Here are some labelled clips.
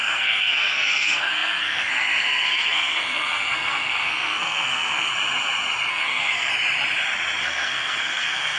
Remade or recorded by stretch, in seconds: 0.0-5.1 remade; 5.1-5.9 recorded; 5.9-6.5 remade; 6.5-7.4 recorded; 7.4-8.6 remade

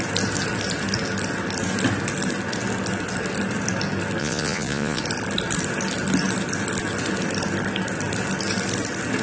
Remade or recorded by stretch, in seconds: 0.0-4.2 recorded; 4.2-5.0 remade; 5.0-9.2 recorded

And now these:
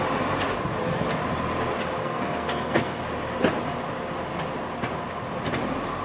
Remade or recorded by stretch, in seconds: 0.0-2.0 recorded; 2.0-3.0 remade; 3.0-6.0 recorded